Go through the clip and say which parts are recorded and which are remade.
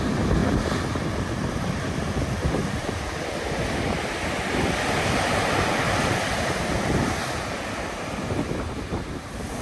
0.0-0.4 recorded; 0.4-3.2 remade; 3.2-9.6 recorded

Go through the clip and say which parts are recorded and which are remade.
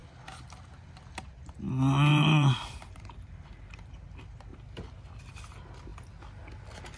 0.0-2.1 recorded; 2.1-4.0 remade; 4.0-7.0 recorded